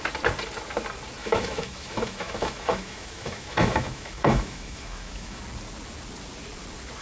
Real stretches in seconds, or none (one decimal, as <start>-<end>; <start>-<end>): 0.0-1.2; 5.4-7.0

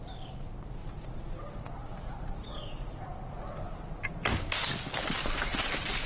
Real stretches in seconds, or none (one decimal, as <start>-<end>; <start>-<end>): 0.0-1.8; 2.6-6.1

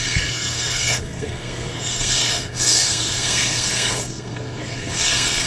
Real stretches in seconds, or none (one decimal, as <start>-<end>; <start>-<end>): none

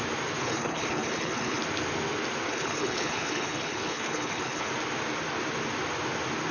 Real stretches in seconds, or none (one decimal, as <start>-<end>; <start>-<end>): 0.0-0.4; 1.6-2.5; 4.7-6.5

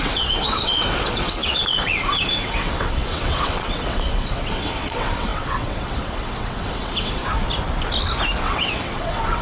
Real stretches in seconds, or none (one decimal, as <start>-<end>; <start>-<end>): 7.2-8.4